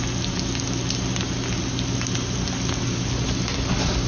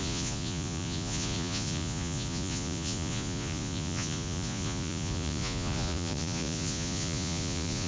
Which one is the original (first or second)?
first